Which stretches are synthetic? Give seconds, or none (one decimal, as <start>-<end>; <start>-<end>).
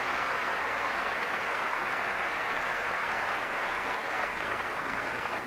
0.0-5.5